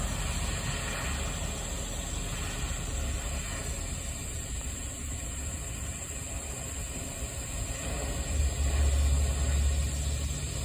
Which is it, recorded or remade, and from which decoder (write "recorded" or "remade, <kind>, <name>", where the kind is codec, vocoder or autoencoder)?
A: recorded